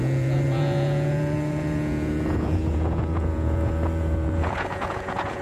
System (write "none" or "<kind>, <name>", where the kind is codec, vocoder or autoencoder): vocoder, Vocos